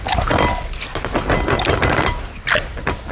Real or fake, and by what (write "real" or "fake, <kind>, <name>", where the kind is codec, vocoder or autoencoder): real